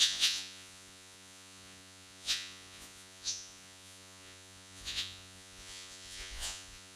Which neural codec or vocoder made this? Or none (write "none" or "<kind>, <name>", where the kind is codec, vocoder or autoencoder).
vocoder, Vocos